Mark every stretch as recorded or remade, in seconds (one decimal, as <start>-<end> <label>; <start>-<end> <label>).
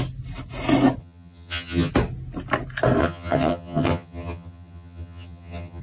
0.0-1.0 recorded; 1.0-1.9 remade; 1.9-3.0 recorded; 3.0-5.8 remade